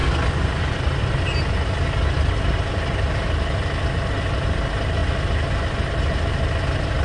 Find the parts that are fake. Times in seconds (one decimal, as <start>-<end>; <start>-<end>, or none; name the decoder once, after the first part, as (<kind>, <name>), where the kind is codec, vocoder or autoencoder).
none